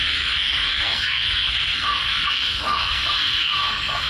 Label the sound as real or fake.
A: fake